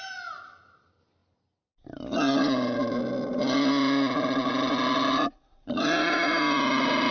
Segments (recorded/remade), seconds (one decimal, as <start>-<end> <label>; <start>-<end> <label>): 0.0-7.1 recorded